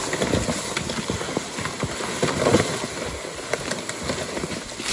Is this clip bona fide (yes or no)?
yes